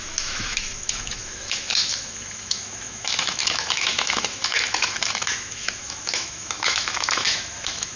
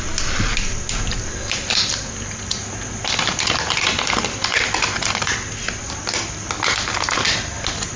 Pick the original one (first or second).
second